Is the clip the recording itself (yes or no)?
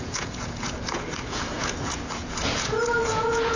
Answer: no